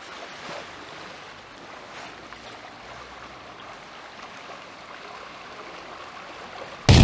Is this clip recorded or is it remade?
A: recorded